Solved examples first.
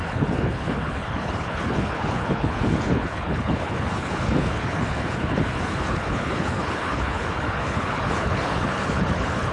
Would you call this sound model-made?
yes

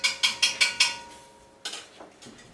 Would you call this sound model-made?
no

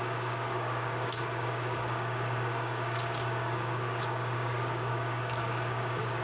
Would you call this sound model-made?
yes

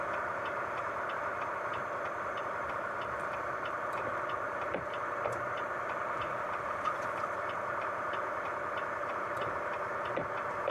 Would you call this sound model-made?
yes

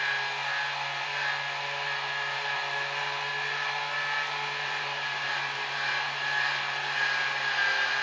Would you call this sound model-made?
no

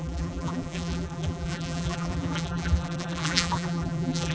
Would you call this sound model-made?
yes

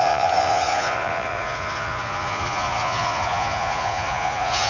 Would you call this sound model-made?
yes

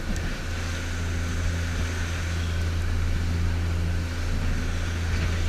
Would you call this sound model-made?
no